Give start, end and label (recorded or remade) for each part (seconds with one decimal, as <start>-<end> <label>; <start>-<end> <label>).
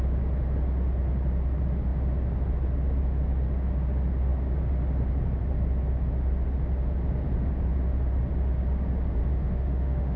0.0-9.2 recorded; 9.2-10.2 remade